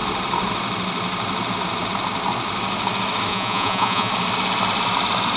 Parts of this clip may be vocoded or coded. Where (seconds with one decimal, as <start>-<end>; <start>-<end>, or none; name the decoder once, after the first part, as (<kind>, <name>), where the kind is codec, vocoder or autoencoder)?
3.3-4.1 (vocoder, Vocos)

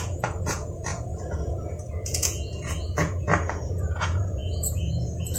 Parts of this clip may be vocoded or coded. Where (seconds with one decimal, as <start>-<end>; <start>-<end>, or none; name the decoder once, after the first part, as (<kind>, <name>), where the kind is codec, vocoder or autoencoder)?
0.0-5.4 (vocoder, Vocos)

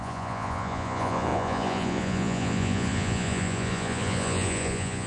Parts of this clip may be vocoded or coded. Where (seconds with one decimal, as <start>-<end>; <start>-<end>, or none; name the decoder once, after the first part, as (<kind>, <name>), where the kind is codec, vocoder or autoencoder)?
0.0-5.1 (vocoder, Vocos)

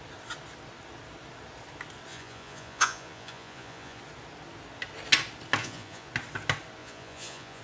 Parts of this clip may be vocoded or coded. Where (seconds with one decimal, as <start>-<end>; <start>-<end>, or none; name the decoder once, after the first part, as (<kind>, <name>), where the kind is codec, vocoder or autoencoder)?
2.1-4.0 (vocoder, Vocos); 5.6-6.1; 6.8-7.6

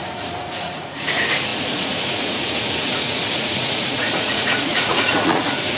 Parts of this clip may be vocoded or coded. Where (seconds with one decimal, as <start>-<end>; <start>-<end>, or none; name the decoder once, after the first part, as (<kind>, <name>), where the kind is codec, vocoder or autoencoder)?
0.0-5.8 (vocoder, Vocos)

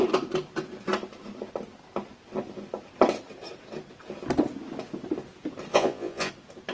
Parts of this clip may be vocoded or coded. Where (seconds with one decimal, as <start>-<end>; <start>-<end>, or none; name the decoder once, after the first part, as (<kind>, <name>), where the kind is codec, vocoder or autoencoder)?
5.7-6.3 (vocoder, Vocos)